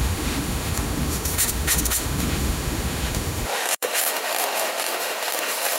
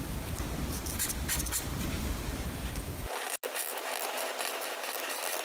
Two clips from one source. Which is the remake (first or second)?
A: first